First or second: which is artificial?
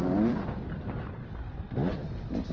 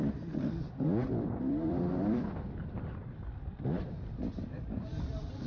second